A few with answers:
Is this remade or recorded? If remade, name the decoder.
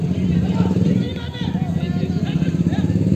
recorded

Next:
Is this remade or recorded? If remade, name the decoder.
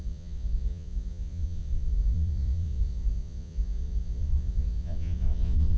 remade, vocoder, Vocos